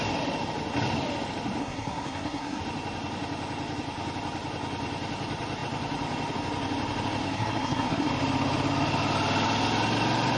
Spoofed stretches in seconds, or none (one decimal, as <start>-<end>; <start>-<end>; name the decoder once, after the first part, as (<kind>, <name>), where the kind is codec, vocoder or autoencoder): 1.6-2.6 (codec, SNAC); 7.2-8.1